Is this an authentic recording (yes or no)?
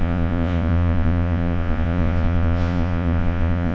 no